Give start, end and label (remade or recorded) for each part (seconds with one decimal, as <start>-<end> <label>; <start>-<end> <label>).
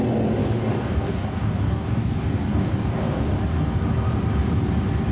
0.0-0.4 recorded; 0.4-3.4 remade; 3.4-5.1 recorded